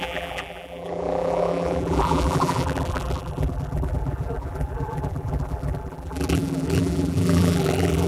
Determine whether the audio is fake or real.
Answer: fake